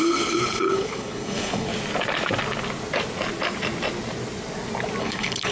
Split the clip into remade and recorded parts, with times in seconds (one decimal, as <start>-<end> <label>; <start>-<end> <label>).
0.0-1.7 remade; 1.7-5.0 recorded; 5.0-5.5 remade

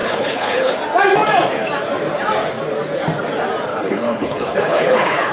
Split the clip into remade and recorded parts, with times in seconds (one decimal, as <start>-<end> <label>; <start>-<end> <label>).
0.0-0.7 remade; 0.7-3.7 recorded; 3.7-5.3 remade

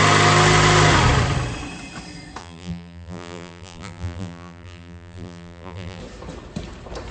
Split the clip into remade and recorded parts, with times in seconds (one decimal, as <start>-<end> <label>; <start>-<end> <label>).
0.0-2.4 recorded; 2.4-6.0 remade; 6.0-7.1 recorded

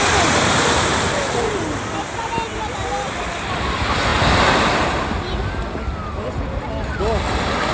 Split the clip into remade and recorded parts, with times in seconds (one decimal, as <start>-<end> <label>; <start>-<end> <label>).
0.0-7.7 recorded

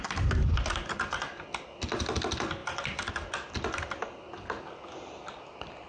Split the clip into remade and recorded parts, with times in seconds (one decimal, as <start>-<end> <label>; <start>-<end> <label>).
0.0-5.9 recorded

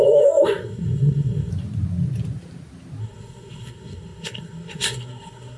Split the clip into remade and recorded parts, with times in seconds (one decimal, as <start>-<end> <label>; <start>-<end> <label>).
0.0-1.5 remade; 1.5-3.0 recorded; 3.0-5.6 remade